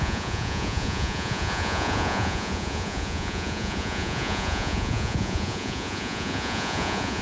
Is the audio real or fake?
fake